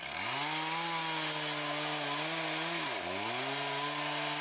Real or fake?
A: real